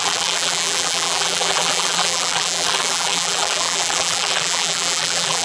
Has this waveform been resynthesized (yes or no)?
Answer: yes